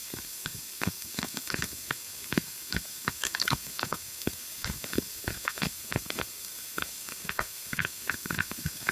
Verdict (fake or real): fake